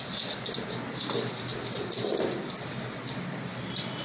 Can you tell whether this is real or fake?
real